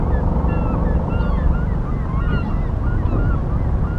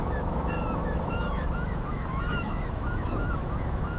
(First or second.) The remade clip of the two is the second